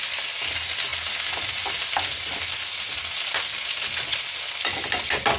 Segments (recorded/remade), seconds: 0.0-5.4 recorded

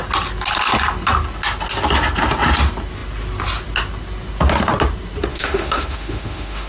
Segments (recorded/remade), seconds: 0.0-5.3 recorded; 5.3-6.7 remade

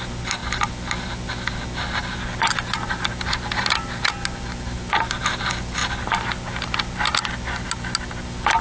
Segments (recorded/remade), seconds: 0.0-8.6 recorded

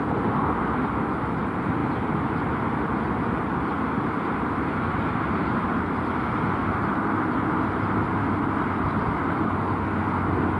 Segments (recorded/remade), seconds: 0.0-10.6 recorded

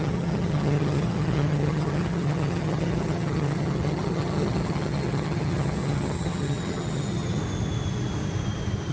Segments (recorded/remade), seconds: 0.0-7.4 remade; 7.4-8.9 recorded

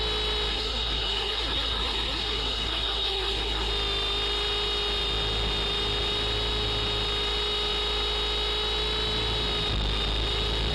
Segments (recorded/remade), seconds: 0.0-0.5 recorded; 0.5-3.7 remade; 3.7-10.7 recorded

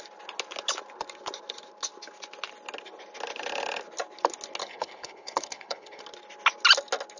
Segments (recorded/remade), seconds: 0.0-4.6 recorded; 4.6-6.0 remade; 6.0-7.2 recorded